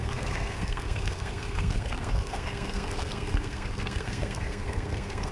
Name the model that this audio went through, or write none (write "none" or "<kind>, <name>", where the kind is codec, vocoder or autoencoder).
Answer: codec, SNAC